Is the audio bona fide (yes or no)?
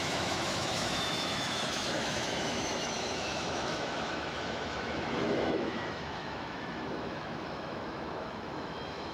no